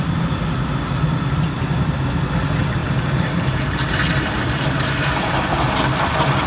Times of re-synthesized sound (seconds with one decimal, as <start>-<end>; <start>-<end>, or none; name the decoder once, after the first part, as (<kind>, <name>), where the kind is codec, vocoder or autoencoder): 2.8-6.5 (vocoder, BigVGAN v2)